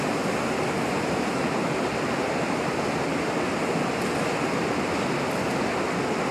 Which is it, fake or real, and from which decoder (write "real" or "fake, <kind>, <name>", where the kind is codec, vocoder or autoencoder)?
real